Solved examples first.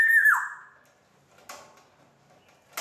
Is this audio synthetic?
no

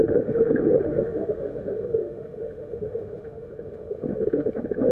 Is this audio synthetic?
yes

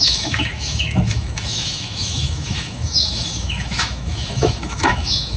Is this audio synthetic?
yes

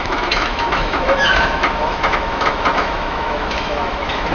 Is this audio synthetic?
yes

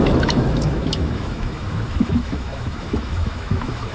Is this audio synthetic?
yes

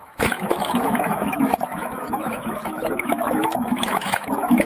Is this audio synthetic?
yes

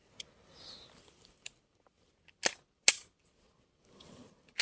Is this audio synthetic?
no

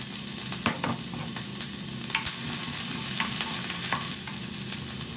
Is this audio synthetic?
no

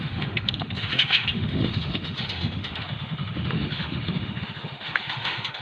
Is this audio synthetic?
yes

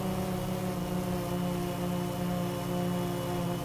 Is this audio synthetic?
no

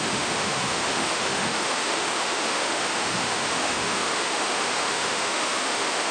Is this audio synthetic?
yes